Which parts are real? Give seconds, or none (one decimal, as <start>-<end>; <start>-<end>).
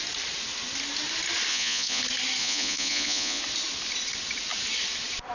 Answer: 0.0-1.5; 2.0-2.4; 3.4-5.3